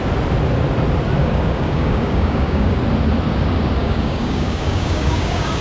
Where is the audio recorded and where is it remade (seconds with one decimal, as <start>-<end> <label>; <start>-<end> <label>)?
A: 0.0-1.2 recorded; 1.2-2.8 remade; 2.8-3.8 recorded; 3.8-5.6 remade